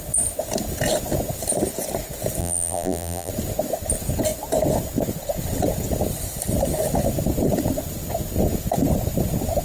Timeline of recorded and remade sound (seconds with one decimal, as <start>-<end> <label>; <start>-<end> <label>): 0.0-2.4 recorded; 2.4-3.3 remade; 3.3-9.6 recorded